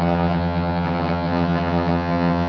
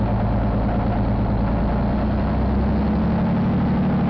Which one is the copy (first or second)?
first